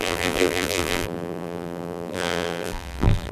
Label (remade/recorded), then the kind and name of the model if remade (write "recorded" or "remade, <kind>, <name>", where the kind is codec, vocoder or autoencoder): remade, vocoder, BigVGAN v2